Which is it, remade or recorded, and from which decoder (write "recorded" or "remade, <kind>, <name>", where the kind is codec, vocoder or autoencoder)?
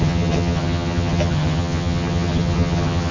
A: remade, vocoder, HiFi-GAN